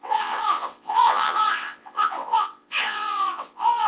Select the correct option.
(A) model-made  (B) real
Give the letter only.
A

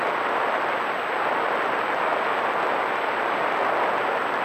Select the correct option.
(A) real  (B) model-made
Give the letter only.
A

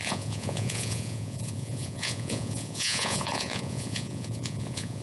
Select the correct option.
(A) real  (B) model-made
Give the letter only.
B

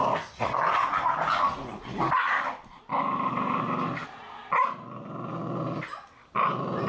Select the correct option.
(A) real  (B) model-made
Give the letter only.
A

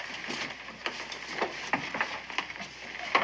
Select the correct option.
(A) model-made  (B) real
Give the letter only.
B